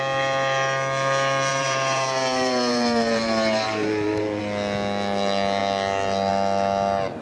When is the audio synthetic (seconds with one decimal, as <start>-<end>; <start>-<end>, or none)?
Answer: 1.5-4.4